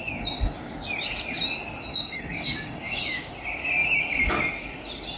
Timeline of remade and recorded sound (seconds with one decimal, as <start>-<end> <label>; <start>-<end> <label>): 0.0-1.9 recorded; 1.9-3.3 remade; 3.3-5.2 recorded